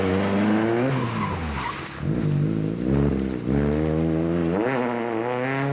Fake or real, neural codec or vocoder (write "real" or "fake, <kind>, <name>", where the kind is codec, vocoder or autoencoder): real